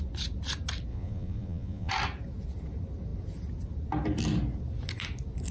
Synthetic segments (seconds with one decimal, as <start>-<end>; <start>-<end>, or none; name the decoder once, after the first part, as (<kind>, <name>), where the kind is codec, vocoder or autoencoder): 0.9-1.9 (vocoder, Vocos)